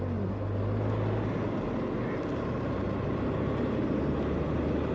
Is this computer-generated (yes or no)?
no